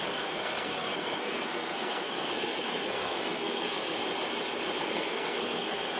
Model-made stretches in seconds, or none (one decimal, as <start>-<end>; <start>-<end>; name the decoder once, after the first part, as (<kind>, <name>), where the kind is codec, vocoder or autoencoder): 0.0-4.0 (codec, SNAC); 4.8-6.0